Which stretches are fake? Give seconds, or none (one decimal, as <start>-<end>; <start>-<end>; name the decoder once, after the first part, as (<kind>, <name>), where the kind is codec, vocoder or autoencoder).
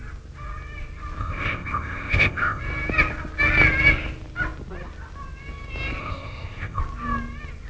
1.2-2.6 (codec, ZipCodec); 6.0-6.8